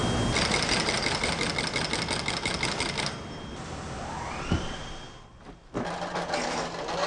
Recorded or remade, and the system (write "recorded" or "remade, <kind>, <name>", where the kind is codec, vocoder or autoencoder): recorded